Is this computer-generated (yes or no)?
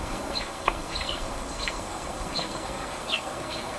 yes